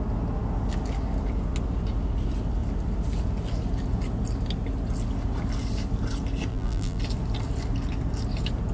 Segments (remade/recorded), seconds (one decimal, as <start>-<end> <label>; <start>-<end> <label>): 0.0-6.5 recorded; 6.5-7.0 remade; 7.0-8.7 recorded